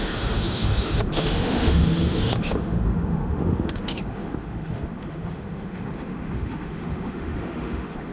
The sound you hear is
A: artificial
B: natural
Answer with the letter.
A